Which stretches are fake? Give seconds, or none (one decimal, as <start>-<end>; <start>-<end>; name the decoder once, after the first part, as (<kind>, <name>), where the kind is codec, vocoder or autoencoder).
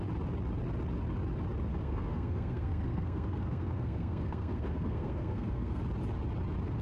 1.7-5.8 (codec, SNAC)